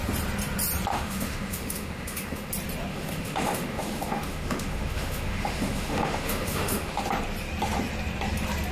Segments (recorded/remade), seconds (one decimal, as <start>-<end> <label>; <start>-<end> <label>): 0.0-0.9 recorded; 0.9-2.5 remade; 2.5-2.9 recorded; 2.9-7.0 remade; 7.0-8.7 recorded